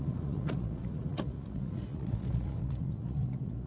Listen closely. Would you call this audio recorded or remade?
remade